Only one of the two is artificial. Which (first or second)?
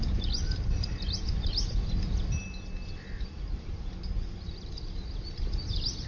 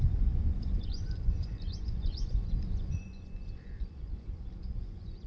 second